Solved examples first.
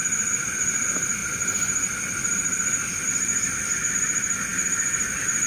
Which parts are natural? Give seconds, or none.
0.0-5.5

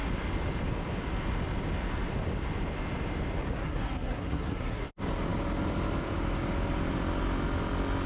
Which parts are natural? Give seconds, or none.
0.0-3.6; 4.8-8.1

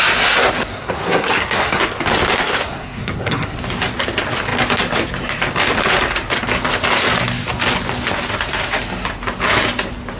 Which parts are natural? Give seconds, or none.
0.0-0.7; 1.8-2.4; 3.6-10.2

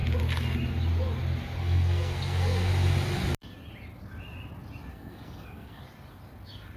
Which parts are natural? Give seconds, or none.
0.0-1.6; 2.7-4.9; 5.8-6.8

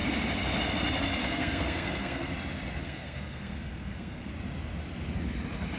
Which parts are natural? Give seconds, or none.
0.0-1.2; 2.3-2.8; 4.3-5.8

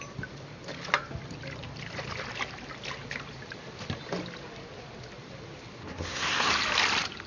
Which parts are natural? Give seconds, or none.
0.0-5.9; 6.5-7.3

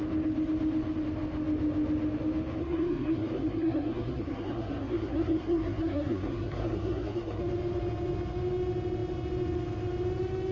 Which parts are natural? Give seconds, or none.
0.0-2.6; 7.4-10.5

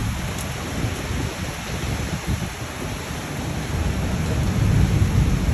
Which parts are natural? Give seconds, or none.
0.0-5.5